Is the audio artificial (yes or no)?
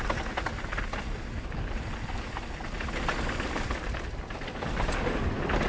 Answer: no